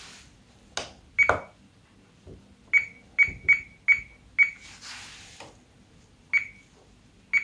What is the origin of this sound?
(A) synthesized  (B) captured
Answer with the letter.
B